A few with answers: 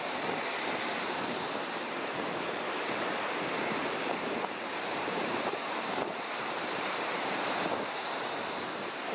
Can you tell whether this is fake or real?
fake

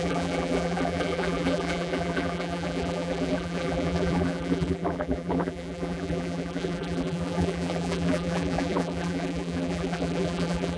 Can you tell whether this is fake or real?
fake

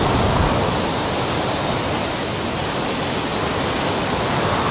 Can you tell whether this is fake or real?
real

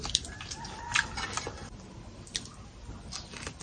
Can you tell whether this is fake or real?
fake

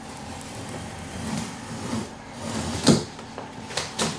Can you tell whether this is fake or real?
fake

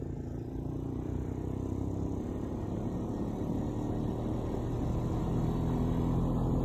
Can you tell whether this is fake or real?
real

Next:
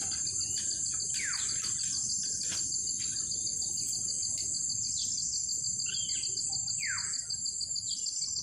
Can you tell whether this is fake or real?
real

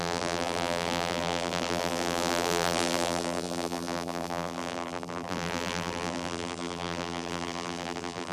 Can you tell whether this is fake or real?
fake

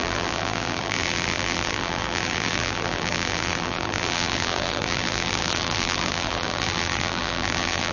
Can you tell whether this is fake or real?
fake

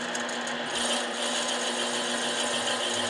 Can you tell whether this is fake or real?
real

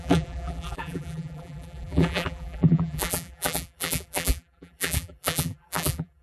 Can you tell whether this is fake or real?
fake